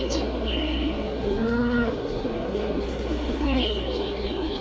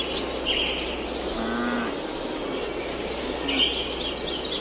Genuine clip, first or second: second